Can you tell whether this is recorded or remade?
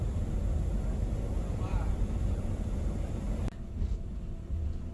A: recorded